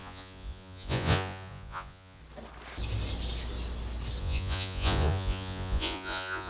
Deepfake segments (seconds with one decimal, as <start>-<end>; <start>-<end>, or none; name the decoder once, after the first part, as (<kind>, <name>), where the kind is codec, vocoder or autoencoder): 0.0-2.2 (vocoder, Vocos); 4.2-6.5